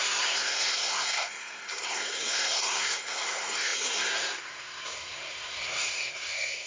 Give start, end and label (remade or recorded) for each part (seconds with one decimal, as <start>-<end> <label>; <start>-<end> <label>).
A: 0.0-6.7 remade